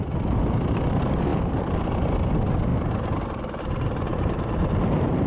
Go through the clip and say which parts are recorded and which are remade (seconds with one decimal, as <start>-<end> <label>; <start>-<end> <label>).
0.0-1.3 recorded; 1.3-1.9 remade; 1.9-4.1 recorded; 4.1-5.3 remade